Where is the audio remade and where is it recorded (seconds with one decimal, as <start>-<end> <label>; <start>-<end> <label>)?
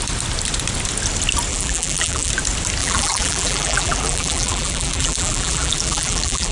0.0-1.5 recorded; 1.5-2.3 remade; 2.3-2.8 recorded; 2.8-6.5 remade